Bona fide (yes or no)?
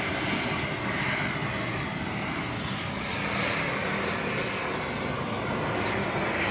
yes